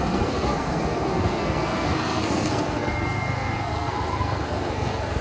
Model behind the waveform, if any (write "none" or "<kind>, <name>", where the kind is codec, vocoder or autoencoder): codec, SNAC